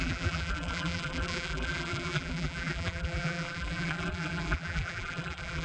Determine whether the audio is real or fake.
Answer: fake